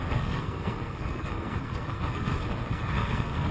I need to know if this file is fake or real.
fake